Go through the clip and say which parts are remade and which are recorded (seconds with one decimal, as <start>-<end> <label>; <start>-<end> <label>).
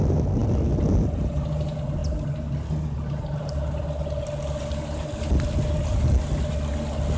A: 0.0-7.2 recorded